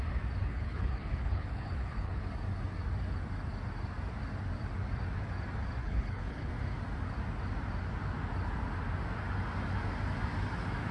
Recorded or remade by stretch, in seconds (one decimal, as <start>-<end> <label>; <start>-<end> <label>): 0.0-0.4 recorded; 0.4-2.2 remade; 2.2-5.8 recorded; 5.8-6.5 remade; 6.5-10.9 recorded